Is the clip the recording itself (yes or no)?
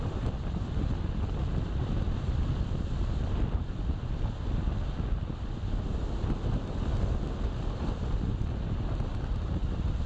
yes